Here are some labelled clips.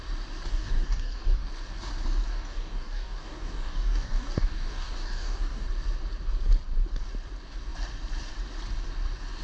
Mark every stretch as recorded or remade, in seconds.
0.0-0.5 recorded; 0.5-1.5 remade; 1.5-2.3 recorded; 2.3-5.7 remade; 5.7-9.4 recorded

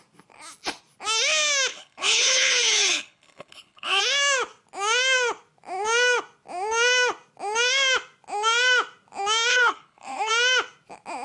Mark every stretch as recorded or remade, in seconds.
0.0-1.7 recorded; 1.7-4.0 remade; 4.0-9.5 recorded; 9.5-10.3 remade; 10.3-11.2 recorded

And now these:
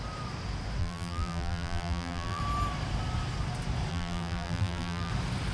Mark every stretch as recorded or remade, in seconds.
0.0-0.8 recorded; 0.8-2.4 remade; 2.4-3.9 recorded; 3.9-5.1 remade; 5.1-5.5 recorded

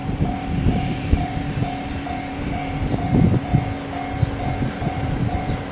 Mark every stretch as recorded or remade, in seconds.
0.0-3.5 remade; 3.5-4.6 recorded; 4.6-5.7 remade